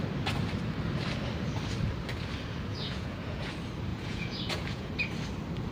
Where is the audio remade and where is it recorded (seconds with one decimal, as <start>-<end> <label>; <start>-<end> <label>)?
0.0-2.7 recorded; 2.7-3.5 remade; 3.5-3.9 recorded; 3.9-4.9 remade; 4.9-5.7 recorded